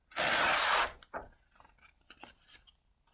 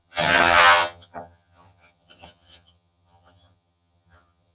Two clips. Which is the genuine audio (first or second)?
first